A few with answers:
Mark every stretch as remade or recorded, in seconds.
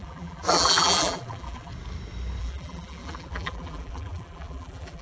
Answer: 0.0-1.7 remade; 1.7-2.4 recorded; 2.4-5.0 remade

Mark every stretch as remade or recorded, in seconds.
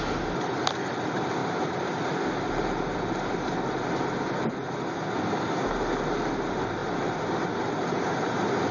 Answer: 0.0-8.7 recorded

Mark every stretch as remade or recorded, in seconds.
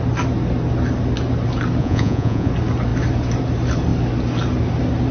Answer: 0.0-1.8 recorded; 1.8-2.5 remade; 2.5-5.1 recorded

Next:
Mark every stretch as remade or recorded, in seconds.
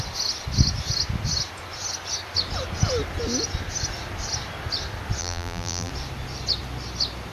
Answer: 0.0-5.2 recorded; 5.2-5.9 remade; 5.9-7.3 recorded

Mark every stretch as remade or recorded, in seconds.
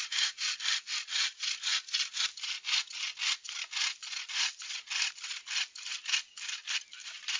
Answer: 0.0-7.4 recorded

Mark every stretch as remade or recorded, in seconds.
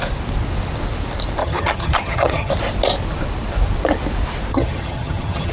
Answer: 0.0-1.4 recorded; 1.4-2.5 remade; 2.5-4.5 recorded; 4.5-5.5 remade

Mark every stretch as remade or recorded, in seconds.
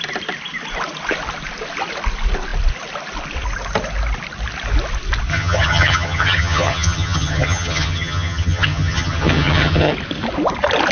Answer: 0.0-5.3 recorded; 5.3-9.9 remade; 9.9-10.9 recorded